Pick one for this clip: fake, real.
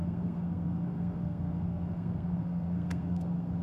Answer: fake